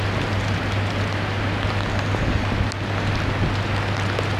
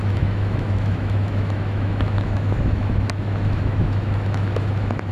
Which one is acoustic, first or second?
first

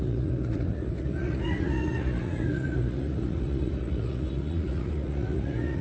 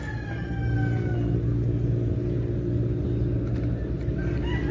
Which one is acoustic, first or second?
second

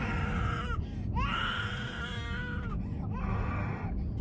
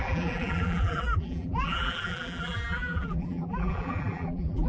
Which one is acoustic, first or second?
first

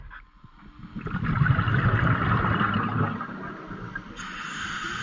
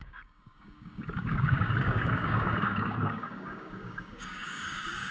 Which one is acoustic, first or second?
first